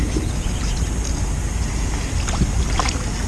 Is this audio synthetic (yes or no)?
no